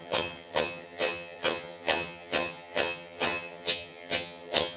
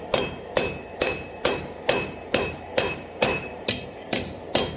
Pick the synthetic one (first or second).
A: first